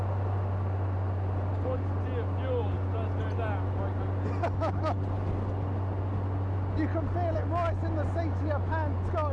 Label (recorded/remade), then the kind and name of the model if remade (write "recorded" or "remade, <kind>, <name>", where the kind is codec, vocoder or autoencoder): recorded